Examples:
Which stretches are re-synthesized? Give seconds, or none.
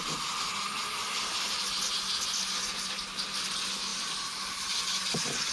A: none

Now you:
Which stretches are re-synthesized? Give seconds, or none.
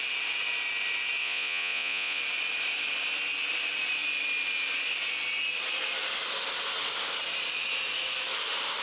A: 1.2-2.2 (vocoder, Vocos)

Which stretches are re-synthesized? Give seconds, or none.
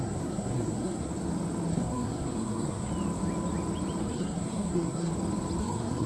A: 0.0-1.1 (codec, SNAC); 1.7-2.9; 4.0-5.1; 5.6-6.1